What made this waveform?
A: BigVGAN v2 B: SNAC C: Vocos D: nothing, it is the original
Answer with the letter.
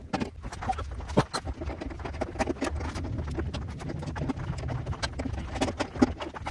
D